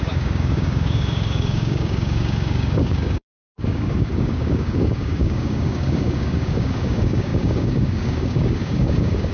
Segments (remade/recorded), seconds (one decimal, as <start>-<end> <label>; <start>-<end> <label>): 0.0-9.3 remade